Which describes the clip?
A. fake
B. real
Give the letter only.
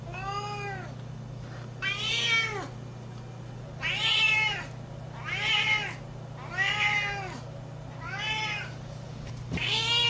B